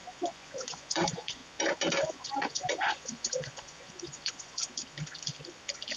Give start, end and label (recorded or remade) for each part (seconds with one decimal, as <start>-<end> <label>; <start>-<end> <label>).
0.0-1.4 remade; 1.4-2.1 recorded; 2.1-4.8 remade; 4.8-6.0 recorded